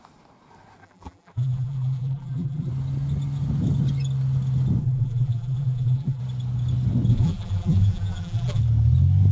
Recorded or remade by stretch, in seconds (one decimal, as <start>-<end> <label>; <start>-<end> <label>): 0.0-0.8 recorded; 0.8-2.7 remade; 2.7-4.8 recorded; 4.8-6.2 remade; 6.2-7.1 recorded; 7.1-8.6 remade; 8.6-9.3 recorded